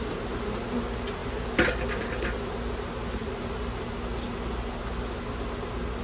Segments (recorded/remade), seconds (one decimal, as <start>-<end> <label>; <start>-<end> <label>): 0.0-6.0 recorded